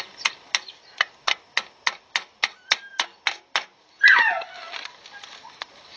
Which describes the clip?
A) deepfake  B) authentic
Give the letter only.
B